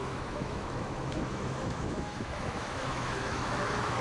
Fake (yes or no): yes